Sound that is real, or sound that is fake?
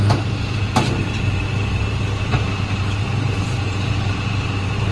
fake